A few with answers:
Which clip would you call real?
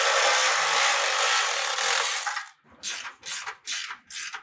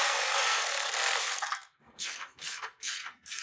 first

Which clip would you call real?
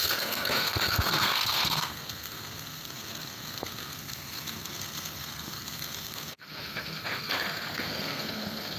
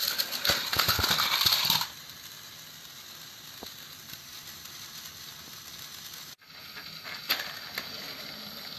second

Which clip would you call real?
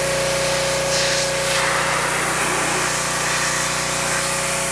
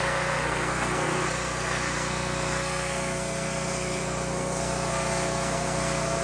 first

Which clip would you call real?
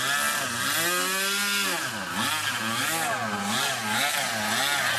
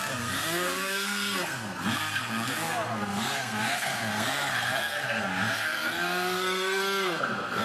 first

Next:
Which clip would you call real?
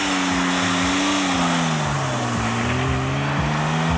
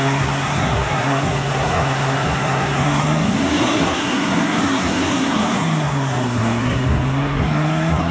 first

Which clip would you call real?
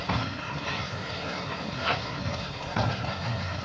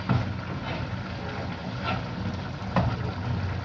second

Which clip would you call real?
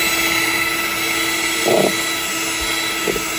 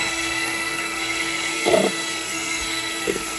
first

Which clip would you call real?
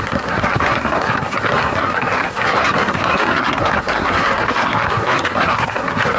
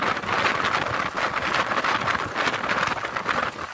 second